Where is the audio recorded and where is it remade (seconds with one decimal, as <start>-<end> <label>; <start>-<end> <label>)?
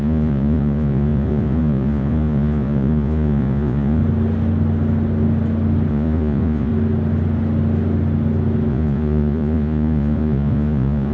0.0-4.0 remade; 4.0-5.9 recorded; 5.9-6.7 remade; 6.7-8.7 recorded; 8.7-11.1 remade